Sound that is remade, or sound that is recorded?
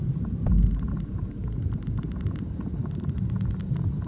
recorded